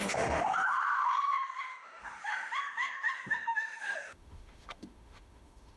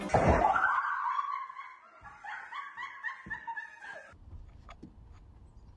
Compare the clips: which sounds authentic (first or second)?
second